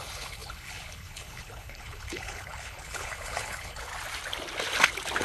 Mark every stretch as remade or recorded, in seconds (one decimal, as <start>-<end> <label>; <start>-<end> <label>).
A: 0.0-3.9 remade; 3.9-5.2 recorded